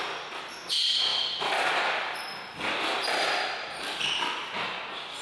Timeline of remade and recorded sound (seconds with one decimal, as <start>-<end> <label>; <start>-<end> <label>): 0.0-1.1 recorded; 1.1-4.2 remade; 4.2-5.2 recorded

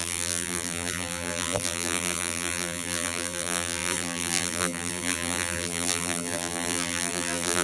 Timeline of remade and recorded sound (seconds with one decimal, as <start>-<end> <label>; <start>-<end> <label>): 0.0-7.6 remade

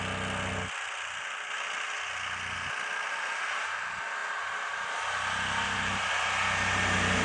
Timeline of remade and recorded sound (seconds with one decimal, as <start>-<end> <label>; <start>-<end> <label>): 0.0-7.2 recorded

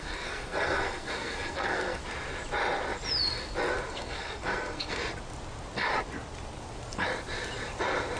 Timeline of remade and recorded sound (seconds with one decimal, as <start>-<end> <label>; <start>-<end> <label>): 0.0-2.0 remade; 2.0-3.9 recorded; 3.9-5.0 remade; 5.0-8.2 recorded

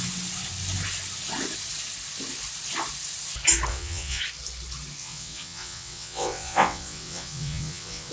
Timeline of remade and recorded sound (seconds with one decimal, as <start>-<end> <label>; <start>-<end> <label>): 0.0-3.7 recorded; 3.7-4.2 remade; 4.2-5.0 recorded; 5.0-8.1 remade

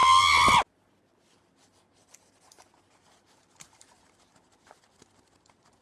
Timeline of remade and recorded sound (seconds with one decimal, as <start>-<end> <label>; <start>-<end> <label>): 0.0-5.8 recorded